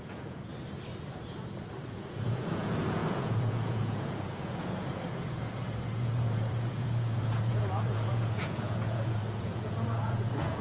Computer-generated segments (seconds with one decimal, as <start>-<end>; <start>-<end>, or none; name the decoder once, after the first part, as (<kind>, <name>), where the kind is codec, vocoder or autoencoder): 0.0-0.5 (vocoder, Vocos); 1.9-10.6